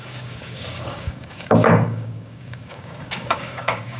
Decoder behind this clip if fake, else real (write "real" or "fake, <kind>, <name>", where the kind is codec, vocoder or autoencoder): fake, codec, DAC